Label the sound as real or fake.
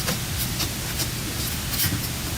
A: real